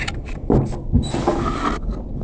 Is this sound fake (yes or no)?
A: no